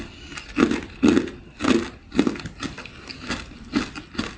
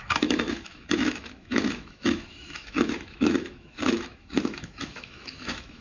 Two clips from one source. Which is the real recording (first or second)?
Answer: first